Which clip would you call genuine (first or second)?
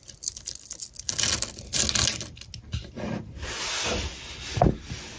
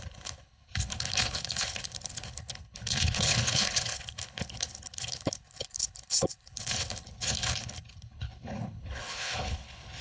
first